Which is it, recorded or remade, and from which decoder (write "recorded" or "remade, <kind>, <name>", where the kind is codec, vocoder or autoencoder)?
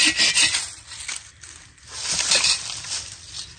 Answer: recorded